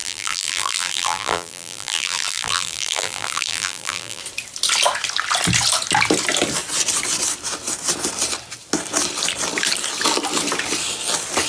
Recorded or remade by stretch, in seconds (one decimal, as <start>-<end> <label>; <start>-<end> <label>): 0.0-4.2 remade; 4.2-11.5 recorded

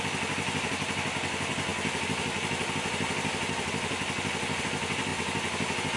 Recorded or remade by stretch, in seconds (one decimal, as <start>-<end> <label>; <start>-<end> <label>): 0.0-6.0 recorded

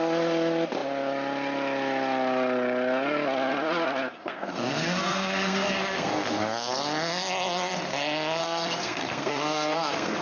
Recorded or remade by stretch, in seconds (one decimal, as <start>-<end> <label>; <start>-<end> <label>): 0.0-4.1 recorded; 4.1-6.7 remade; 6.7-8.4 recorded; 8.4-10.2 remade

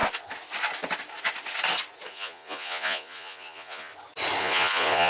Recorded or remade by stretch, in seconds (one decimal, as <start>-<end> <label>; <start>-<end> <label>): 0.0-2.1 recorded; 2.1-3.9 remade; 3.9-4.4 recorded; 4.4-5.1 remade

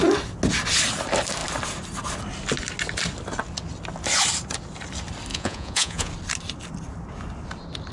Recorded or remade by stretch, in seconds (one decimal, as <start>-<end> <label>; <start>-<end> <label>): 0.0-5.3 recorded; 5.3-6.1 remade; 6.1-7.9 recorded

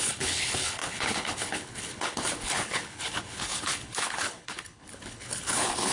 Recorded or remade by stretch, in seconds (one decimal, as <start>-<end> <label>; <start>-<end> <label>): 0.0-5.9 remade

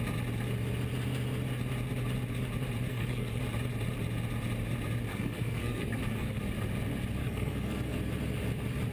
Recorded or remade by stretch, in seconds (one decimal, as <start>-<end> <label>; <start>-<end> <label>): 0.0-2.9 recorded; 2.9-3.4 remade; 3.4-5.1 recorded; 5.1-6.4 remade; 6.4-7.2 recorded; 7.2-8.0 remade; 8.0-8.9 recorded

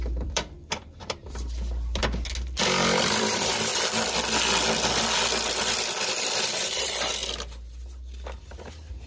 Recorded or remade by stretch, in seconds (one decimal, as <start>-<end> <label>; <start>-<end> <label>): 0.0-2.0 remade; 2.0-2.6 recorded; 2.6-3.7 remade; 3.7-6.2 recorded; 6.2-7.2 remade; 7.2-9.1 recorded